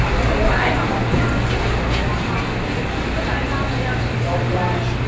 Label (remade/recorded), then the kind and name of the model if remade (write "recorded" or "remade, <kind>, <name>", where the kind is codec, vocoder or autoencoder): recorded